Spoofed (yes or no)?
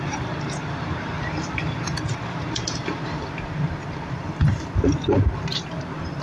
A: yes